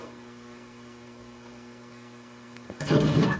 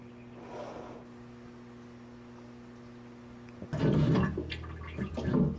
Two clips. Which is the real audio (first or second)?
second